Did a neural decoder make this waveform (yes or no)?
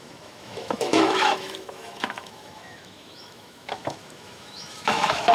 yes